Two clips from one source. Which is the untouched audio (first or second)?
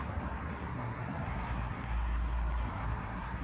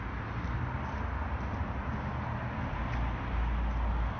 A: second